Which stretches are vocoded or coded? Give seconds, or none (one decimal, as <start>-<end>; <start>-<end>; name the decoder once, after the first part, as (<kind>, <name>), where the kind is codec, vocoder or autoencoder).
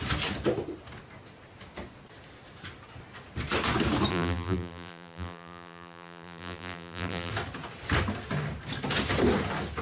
4.1-7.3 (vocoder, BigVGAN v2)